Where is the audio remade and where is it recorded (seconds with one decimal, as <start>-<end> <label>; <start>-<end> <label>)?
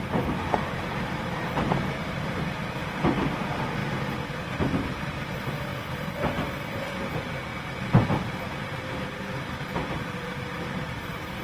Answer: 0.0-7.5 remade; 7.5-9.9 recorded; 9.9-11.4 remade